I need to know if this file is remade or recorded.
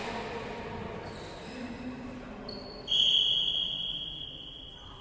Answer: recorded